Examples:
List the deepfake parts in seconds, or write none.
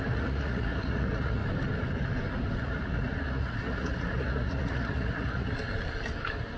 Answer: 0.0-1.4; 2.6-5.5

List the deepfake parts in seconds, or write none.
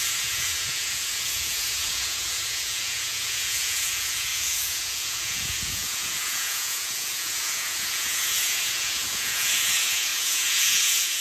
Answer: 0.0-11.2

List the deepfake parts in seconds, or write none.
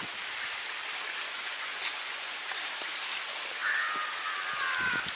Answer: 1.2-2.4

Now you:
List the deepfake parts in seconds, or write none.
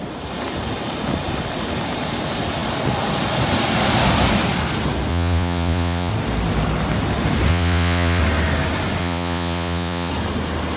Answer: 5.1-6.1; 7.5-8.2; 9.0-10.1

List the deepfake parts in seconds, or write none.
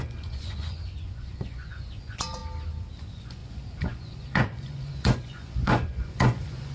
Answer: 0.0-2.4; 3.0-6.7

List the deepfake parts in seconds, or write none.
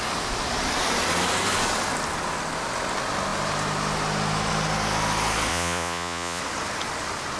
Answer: 5.5-6.4